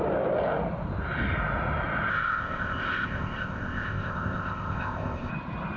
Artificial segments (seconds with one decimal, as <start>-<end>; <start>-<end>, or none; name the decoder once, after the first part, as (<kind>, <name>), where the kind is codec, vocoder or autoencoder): 2.1-5.3 (codec, ZipCodec)